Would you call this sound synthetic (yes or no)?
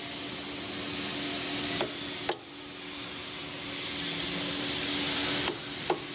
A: no